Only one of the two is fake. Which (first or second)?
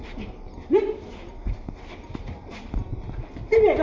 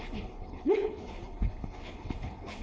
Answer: second